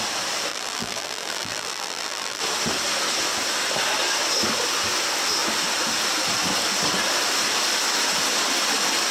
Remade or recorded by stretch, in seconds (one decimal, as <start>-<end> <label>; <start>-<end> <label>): 0.0-0.5 recorded; 0.5-2.4 remade; 2.4-9.1 recorded